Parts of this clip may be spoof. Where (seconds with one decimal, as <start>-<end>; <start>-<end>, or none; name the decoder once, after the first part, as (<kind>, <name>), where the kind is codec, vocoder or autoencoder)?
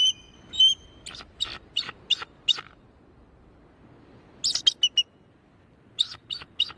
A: none